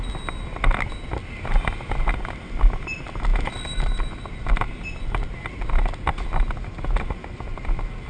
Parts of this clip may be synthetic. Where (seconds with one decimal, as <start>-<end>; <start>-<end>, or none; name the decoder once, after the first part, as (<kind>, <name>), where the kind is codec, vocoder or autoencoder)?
none